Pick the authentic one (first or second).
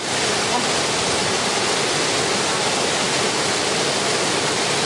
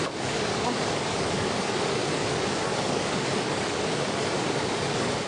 first